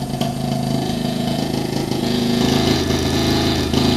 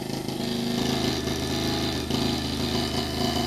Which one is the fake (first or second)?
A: first